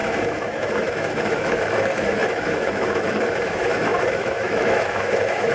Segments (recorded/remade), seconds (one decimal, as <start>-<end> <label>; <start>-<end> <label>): 0.0-5.5 remade